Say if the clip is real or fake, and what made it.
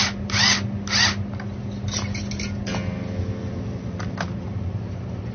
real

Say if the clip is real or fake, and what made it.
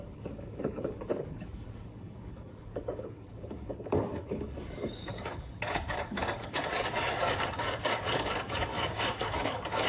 fake, codec, DAC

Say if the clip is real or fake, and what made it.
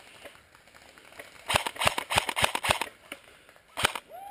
real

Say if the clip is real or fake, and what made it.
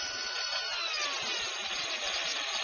real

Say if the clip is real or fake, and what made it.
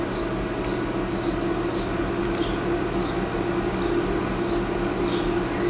real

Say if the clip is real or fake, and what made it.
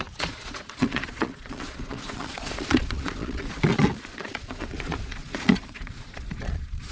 fake, vocoder, Vocos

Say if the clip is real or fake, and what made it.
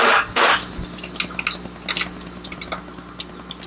real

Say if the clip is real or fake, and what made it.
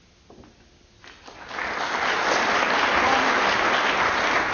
real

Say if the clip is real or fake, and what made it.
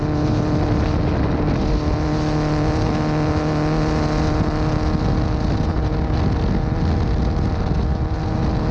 real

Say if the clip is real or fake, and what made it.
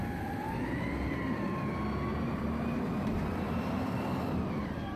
fake, vocoder, BigVGAN v2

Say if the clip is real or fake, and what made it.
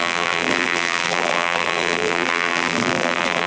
fake, vocoder, BigVGAN v2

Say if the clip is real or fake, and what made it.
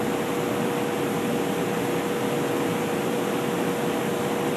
real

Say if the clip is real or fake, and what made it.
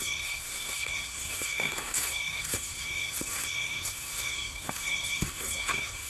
fake, codec, SNAC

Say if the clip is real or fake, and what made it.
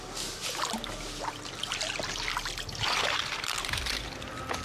real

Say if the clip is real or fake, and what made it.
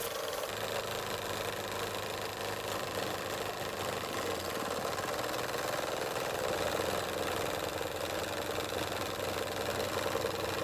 real